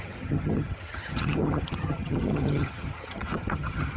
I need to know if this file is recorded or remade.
remade